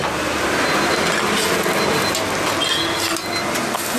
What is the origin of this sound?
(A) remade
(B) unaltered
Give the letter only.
B